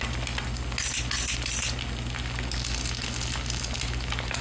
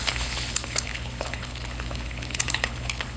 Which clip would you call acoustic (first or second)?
first